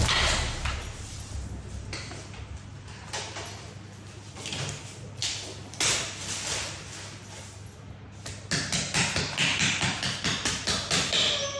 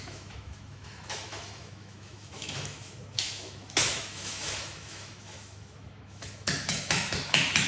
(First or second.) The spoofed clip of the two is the second